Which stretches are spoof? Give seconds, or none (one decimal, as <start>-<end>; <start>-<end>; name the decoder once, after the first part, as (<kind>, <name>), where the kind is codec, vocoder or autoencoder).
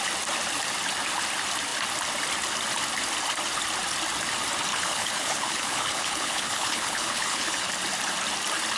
4.7-7.7 (codec, HILCodec)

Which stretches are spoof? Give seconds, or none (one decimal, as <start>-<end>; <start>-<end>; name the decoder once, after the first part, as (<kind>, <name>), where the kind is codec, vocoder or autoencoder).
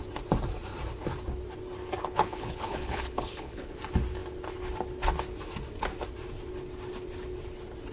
2.0-3.7 (codec, HILCodec)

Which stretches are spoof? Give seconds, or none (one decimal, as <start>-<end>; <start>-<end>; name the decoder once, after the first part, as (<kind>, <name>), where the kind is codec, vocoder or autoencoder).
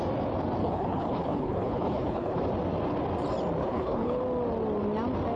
0.6-2.4 (codec, HILCodec); 3.6-4.2